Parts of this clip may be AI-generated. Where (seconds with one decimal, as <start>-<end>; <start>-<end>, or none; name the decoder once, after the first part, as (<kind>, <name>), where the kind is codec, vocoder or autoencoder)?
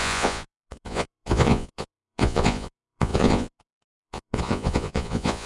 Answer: 0.0-5.5 (vocoder, Vocos)